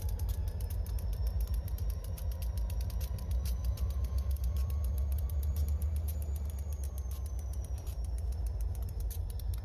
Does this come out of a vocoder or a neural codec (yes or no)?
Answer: yes